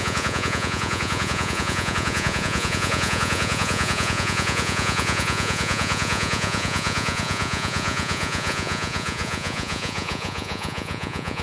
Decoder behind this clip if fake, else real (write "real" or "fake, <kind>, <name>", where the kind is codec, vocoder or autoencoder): fake, vocoder, Vocos